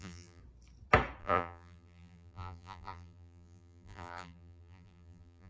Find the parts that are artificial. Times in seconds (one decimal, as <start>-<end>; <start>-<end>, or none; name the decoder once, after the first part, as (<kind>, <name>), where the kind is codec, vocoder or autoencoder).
0.0-0.4 (vocoder, BigVGAN v2); 1.2-5.5